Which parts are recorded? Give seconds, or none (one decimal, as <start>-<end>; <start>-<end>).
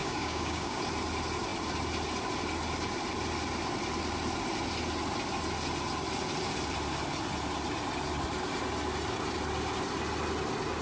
0.8-10.8